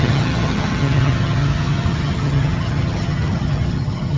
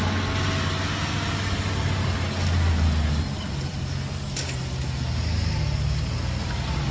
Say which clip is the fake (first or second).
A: first